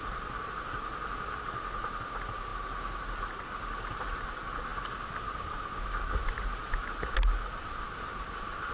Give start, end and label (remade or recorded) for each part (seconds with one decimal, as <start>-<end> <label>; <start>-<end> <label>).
0.0-8.7 recorded